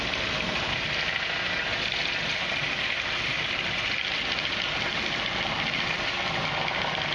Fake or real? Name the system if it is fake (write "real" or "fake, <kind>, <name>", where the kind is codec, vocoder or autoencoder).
real